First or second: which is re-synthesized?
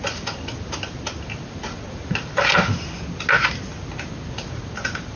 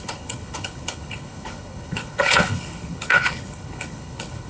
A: second